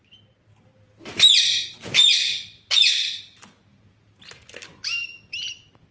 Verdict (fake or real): real